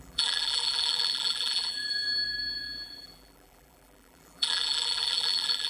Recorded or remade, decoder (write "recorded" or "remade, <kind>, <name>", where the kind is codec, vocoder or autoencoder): remade, vocoder, BigVGAN v2